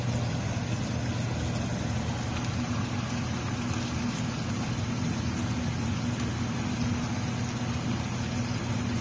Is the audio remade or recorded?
recorded